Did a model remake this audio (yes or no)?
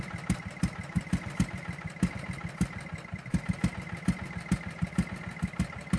no